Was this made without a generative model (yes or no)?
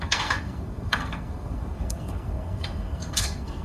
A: no